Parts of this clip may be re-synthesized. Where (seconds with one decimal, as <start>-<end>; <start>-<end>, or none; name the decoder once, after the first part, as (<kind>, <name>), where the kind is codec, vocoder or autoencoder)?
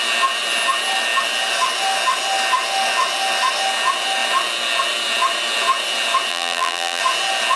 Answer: 6.3-7.0 (vocoder, BigVGAN v2)